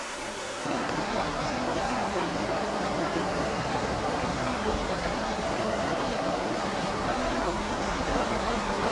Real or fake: fake